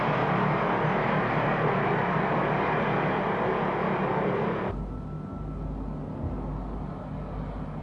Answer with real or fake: real